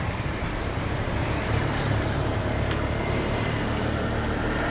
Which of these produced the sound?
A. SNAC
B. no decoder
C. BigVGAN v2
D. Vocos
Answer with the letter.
C